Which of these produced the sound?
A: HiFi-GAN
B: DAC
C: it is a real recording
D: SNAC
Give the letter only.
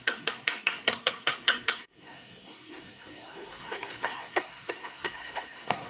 D